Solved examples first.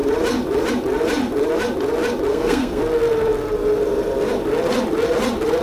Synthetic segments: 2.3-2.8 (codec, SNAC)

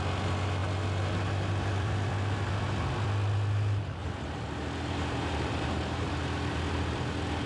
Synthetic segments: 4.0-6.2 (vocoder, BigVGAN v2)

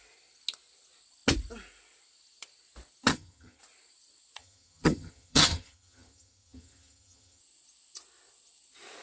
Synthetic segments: 3.1-3.6 (vocoder, HiFi-GAN); 4.4-7.4

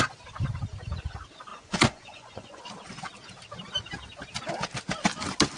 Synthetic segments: 1.5-2.6 (vocoder, Vocos)

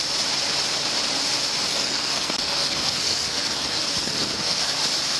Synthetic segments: 1.7-4.8 (codec, SNAC)

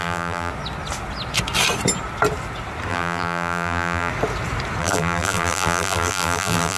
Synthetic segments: 0.0-0.5 (vocoder, BigVGAN v2); 2.9-4.1; 4.8-6.8